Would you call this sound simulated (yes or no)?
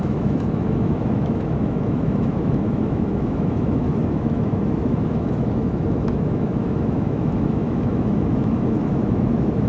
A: yes